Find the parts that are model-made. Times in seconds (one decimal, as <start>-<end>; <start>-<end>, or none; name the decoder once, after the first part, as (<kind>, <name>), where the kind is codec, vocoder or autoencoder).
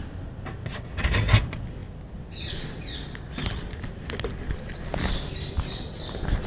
none